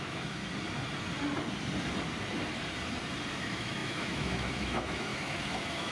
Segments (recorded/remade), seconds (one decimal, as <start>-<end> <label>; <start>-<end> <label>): 0.0-0.4 remade; 0.4-3.3 recorded; 3.3-5.9 remade